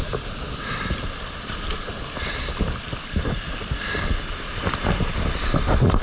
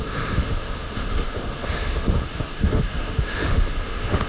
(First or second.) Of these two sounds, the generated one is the second